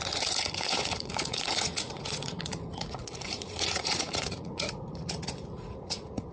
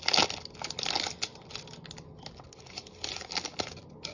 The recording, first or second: second